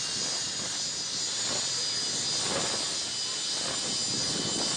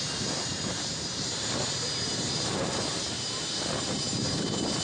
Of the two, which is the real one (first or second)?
first